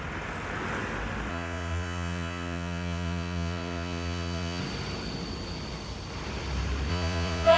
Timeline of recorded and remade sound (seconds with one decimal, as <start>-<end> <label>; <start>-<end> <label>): 0.0-1.3 recorded; 1.3-4.6 remade; 4.6-6.9 recorded; 6.9-7.6 remade